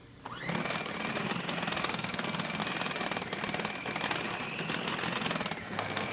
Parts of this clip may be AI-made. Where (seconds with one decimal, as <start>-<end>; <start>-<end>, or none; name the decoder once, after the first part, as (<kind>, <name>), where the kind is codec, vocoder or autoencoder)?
1.8-2.6 (codec, SNAC); 5.6-6.1